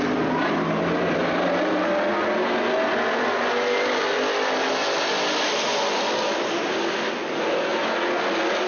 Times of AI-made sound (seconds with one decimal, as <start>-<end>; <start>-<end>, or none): none